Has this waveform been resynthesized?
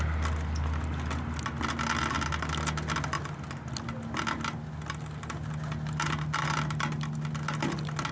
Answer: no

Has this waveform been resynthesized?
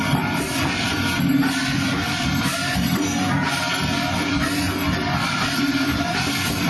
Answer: yes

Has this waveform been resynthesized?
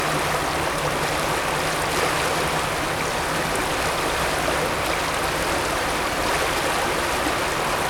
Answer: no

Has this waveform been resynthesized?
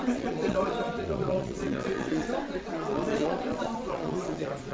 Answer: yes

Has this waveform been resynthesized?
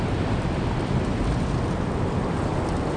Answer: no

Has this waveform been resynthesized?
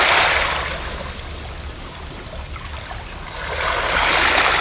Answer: no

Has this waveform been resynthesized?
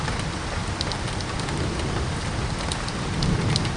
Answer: no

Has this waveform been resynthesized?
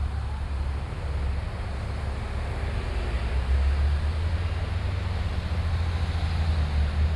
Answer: no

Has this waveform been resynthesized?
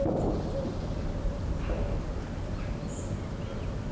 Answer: no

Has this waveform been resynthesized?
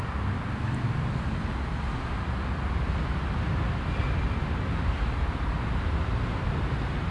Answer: no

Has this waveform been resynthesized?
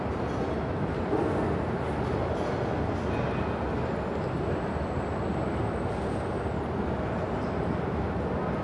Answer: no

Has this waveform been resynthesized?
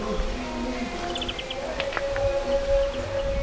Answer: no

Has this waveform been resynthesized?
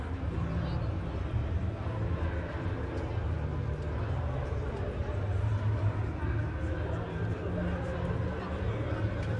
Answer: no